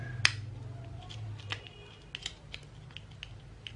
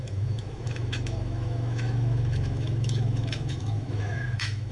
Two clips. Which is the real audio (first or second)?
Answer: first